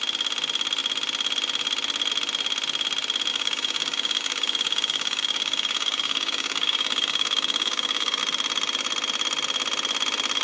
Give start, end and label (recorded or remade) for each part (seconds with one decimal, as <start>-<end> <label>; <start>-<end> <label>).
0.0-3.3 recorded; 3.3-8.2 remade; 8.2-10.4 recorded